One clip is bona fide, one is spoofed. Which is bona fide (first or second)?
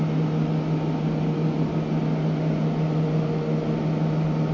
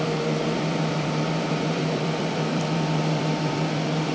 first